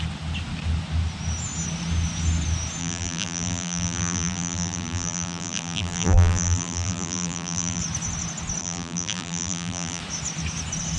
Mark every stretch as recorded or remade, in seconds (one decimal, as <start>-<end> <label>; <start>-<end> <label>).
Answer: 0.0-2.8 recorded; 2.8-7.8 remade; 7.8-8.6 recorded; 8.6-10.0 remade; 10.0-11.0 recorded